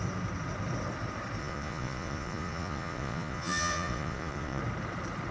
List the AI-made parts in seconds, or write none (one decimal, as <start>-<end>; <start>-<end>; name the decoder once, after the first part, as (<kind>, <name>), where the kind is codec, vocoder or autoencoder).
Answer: 1.4-4.6 (vocoder, Vocos)